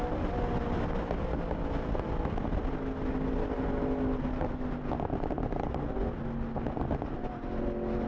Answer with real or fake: real